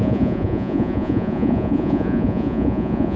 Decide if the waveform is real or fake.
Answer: fake